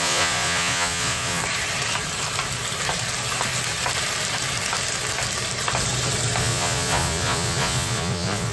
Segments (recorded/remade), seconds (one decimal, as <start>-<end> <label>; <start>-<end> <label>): 0.0-1.4 remade; 1.4-6.4 recorded; 6.4-8.5 remade